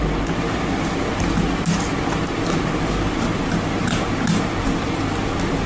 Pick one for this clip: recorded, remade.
recorded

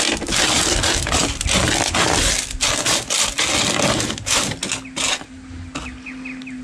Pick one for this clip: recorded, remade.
recorded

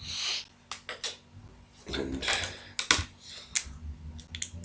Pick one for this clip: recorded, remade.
recorded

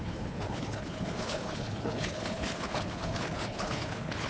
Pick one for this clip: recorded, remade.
remade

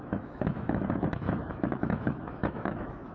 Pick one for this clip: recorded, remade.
remade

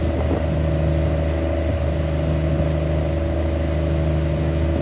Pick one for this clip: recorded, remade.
recorded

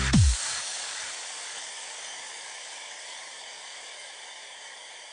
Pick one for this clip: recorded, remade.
remade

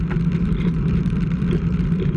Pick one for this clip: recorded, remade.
remade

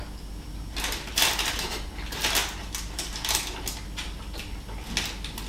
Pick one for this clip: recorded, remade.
recorded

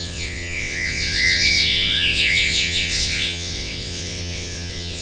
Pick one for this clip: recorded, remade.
remade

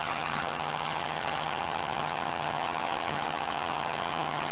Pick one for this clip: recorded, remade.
remade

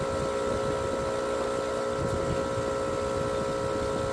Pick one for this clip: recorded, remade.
recorded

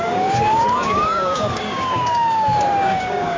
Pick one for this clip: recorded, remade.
remade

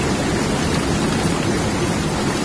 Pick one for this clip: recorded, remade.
recorded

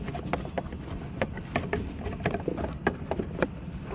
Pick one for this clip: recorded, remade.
recorded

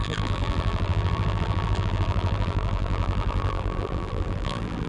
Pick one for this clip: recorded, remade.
remade